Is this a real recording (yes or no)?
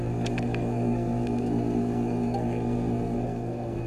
no